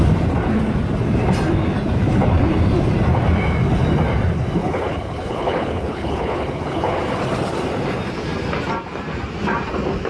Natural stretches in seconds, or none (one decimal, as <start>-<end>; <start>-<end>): 0.0-4.6; 7.0-10.1